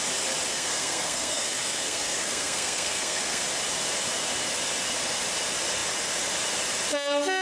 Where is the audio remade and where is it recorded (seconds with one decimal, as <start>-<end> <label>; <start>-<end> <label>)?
0.0-0.5 recorded; 0.5-3.4 remade; 3.4-7.4 recorded